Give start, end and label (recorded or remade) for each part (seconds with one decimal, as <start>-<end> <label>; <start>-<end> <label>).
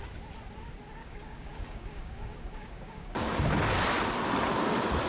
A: 0.0-1.0 recorded; 1.0-3.4 remade; 3.4-5.1 recorded